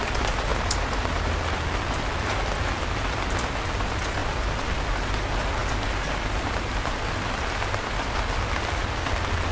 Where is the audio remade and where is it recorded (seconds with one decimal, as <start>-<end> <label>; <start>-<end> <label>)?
0.0-0.5 recorded; 0.5-1.4 remade; 1.4-5.6 recorded; 5.6-8.2 remade; 8.2-9.5 recorded